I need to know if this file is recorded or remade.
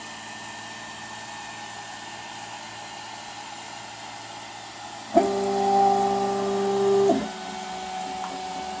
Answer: recorded